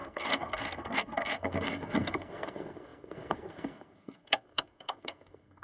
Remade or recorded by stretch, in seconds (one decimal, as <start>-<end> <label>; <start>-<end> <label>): 0.0-5.6 remade